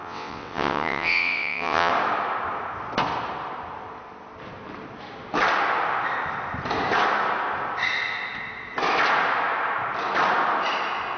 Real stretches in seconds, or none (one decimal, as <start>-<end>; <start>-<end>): 1.9-11.2